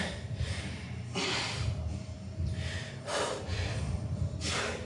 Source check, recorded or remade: remade